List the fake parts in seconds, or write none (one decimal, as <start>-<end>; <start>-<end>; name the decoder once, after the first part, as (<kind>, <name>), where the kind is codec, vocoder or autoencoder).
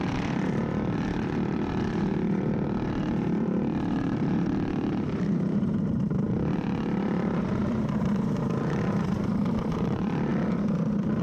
0.0-10.3 (vocoder, BigVGAN v2)